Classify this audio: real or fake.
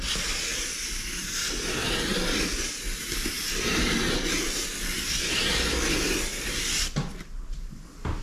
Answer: real